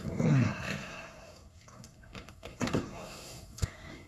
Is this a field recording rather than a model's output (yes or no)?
no